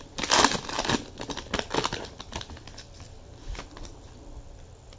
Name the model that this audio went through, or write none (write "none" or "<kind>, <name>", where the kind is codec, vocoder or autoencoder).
none